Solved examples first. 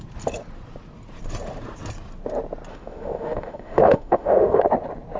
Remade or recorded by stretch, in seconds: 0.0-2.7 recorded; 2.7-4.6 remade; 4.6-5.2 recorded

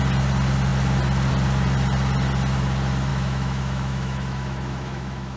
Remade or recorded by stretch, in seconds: 0.0-3.1 recorded; 3.1-5.4 remade

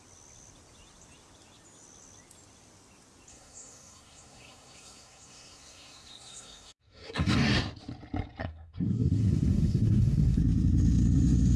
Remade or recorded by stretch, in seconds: 0.0-3.3 recorded; 3.3-7.3 remade; 7.3-8.4 recorded; 8.4-10.4 remade; 10.4-11.6 recorded